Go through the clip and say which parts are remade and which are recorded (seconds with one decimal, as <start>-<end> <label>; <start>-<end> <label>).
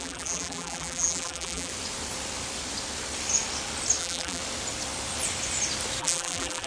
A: 0.0-1.7 remade; 1.7-4.0 recorded; 4.0-4.4 remade; 4.4-6.0 recorded; 6.0-6.7 remade